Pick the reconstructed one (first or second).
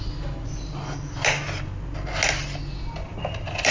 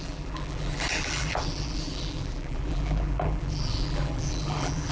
second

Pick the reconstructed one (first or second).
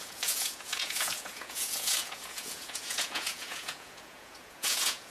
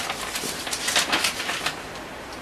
first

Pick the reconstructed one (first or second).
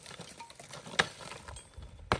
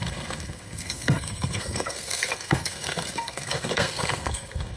second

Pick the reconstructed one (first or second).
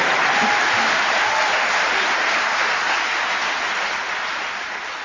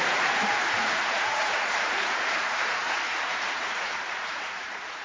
second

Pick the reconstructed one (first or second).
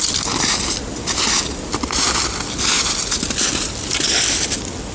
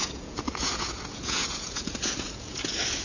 second